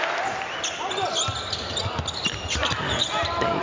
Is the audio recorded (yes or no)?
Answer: yes